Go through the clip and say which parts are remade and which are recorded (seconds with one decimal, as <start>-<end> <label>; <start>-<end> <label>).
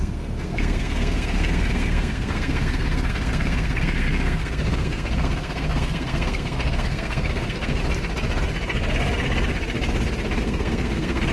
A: 0.0-7.8 remade; 7.8-10.4 recorded; 10.4-11.3 remade